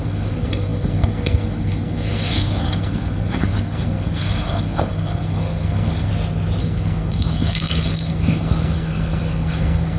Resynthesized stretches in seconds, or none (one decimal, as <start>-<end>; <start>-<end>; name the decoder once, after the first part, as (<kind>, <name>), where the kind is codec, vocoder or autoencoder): 0.0-6.1 (codec, SNAC); 6.6-10.0